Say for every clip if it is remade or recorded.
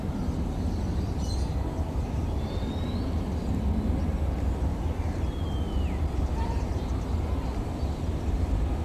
recorded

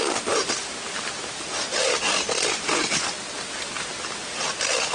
recorded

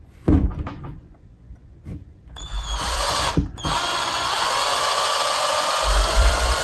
remade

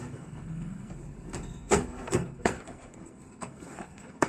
remade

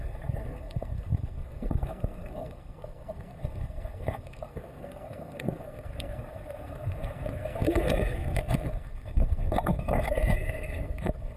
remade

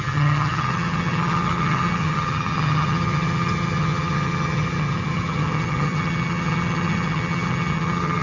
remade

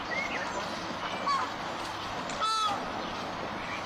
recorded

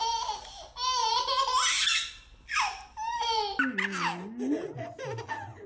recorded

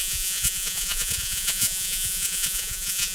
remade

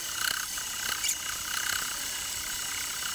recorded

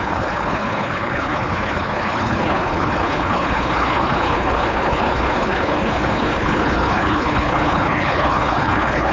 remade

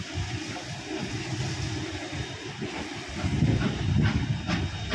recorded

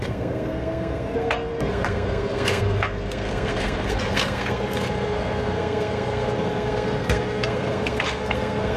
remade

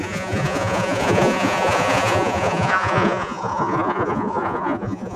remade